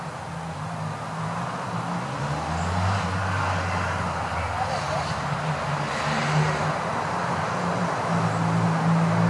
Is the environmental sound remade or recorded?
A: recorded